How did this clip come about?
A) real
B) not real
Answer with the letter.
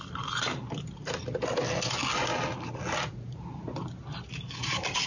A